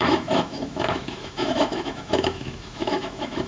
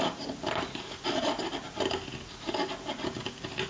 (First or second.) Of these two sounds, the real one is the second